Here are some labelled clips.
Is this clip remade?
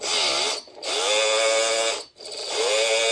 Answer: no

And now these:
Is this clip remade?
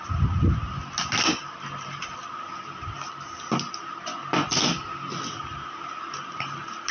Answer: no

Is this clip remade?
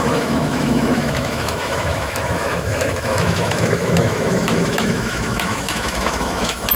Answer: yes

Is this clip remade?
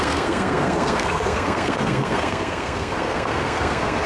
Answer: yes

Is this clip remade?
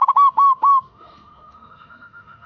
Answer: yes